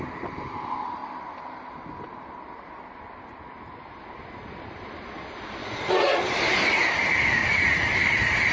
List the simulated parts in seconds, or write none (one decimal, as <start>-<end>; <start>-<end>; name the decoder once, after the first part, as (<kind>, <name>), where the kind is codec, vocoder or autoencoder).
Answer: 5.6-6.2 (vocoder, Vocos); 7.4-7.9